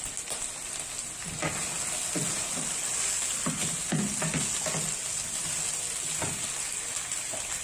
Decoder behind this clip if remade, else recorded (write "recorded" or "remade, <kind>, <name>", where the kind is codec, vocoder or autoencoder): recorded